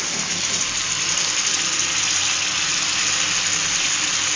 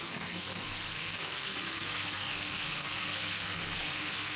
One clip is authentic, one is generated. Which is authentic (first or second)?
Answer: first